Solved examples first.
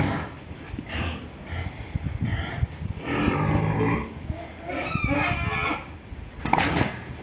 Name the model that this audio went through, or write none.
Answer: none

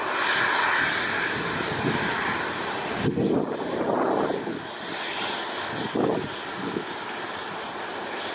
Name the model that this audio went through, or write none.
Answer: none